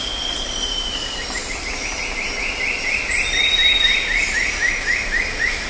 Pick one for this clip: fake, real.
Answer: real